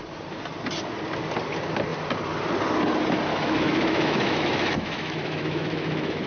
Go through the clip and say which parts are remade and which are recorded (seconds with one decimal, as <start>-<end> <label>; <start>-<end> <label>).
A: 0.0-3.3 recorded; 3.3-6.3 remade